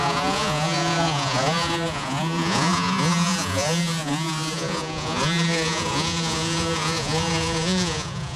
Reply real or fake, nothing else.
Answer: fake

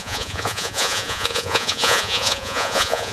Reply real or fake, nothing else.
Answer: fake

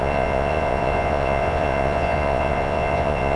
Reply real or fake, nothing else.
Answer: fake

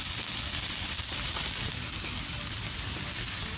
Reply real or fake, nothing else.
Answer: real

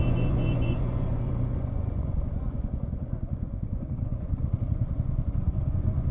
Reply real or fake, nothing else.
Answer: fake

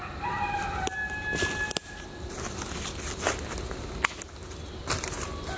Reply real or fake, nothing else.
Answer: real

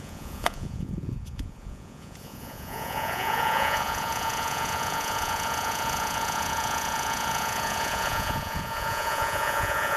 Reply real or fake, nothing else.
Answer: fake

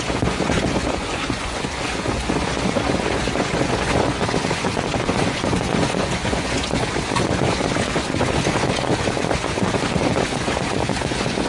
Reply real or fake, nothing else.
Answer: fake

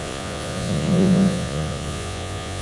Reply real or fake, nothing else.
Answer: fake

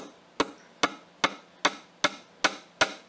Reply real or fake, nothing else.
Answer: real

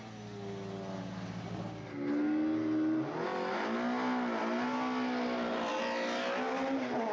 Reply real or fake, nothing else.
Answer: real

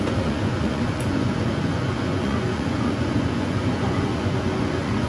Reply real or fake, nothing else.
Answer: fake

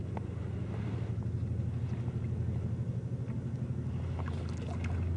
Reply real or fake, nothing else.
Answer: real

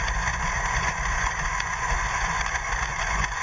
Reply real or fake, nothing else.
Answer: fake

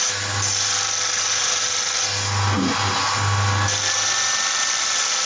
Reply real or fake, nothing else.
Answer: real